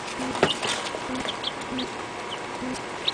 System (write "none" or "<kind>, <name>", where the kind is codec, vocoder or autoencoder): none